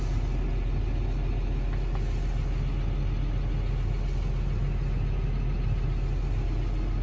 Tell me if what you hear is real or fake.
real